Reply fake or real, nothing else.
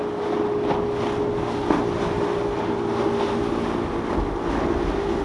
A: real